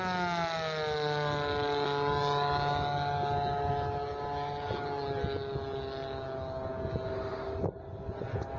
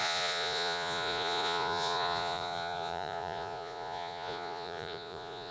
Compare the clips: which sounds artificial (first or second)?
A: second